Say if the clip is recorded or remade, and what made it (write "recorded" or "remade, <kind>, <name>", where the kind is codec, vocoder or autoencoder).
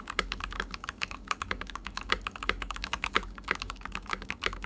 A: remade, codec, DAC